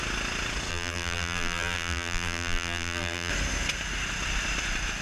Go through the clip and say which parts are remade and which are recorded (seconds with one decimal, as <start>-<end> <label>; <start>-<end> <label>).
0.0-0.7 recorded; 0.7-3.3 remade; 3.3-5.0 recorded